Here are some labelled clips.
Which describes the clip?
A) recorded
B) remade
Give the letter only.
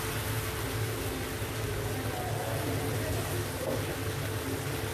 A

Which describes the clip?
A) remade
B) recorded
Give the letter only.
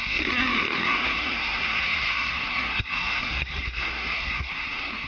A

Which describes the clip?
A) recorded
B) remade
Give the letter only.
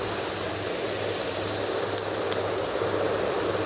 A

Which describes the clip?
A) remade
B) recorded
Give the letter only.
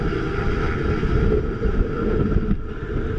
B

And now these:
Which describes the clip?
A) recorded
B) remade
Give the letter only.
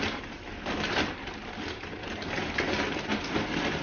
A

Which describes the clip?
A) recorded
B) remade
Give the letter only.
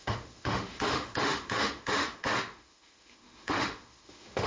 B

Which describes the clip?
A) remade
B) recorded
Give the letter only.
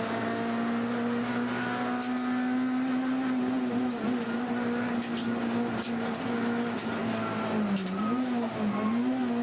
B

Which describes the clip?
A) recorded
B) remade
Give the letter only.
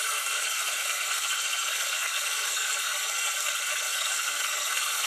B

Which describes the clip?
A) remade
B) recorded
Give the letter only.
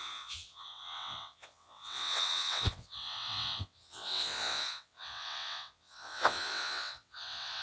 A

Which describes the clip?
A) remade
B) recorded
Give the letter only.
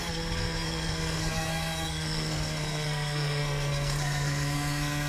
A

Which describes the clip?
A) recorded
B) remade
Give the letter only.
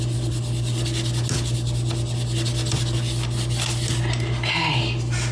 A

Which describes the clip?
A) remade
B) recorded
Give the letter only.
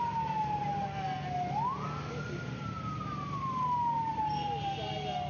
B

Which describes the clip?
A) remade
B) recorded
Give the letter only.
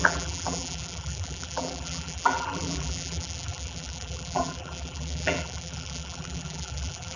A